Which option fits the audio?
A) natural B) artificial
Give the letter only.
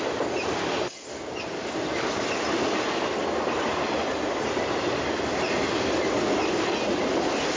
A